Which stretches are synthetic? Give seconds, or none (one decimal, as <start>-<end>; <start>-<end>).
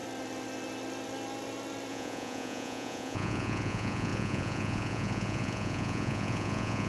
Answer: 1.9-6.9